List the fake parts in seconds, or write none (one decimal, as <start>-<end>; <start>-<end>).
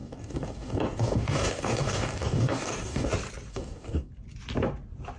0.0-3.1; 3.5-4.1